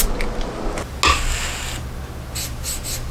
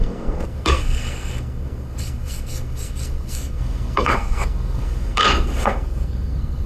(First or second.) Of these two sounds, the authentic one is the first